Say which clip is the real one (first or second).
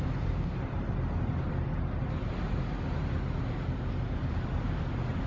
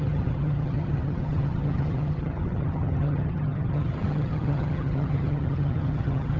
first